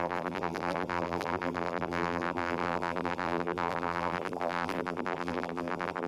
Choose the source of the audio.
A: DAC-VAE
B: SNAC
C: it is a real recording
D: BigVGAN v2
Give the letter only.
D